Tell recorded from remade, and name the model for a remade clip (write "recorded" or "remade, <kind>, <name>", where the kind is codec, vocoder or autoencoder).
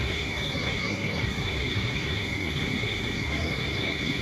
remade, codec, SNAC